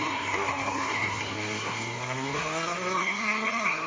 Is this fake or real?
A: fake